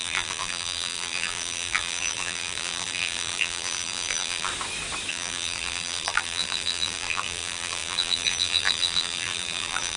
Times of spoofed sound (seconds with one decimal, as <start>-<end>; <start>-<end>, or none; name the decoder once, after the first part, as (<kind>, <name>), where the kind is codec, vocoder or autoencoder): 0.0-4.5 (vocoder, BigVGAN v2); 5.1-10.0